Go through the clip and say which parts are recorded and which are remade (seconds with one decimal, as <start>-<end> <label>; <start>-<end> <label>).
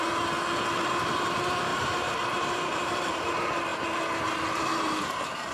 0.0-1.7 recorded; 1.7-3.1 remade; 3.1-5.5 recorded